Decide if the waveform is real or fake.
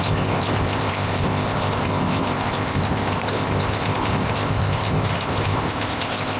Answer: fake